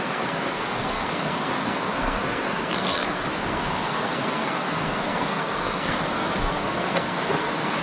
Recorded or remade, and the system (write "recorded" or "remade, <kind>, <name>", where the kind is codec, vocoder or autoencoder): remade, codec, SNAC